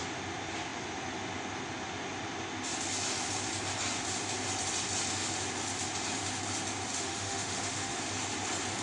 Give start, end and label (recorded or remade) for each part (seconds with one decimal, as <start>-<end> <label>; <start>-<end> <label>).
0.0-6.9 recorded; 6.9-8.0 remade; 8.0-8.8 recorded